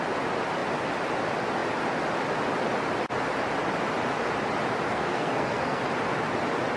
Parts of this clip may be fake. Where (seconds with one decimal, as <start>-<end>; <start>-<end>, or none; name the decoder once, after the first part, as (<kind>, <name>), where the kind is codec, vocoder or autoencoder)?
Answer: 4.9-5.8 (codec, SNAC)